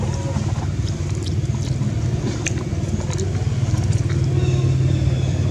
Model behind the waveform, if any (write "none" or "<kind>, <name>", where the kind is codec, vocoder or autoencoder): none